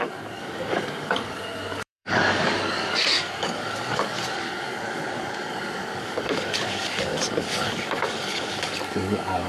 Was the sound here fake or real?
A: fake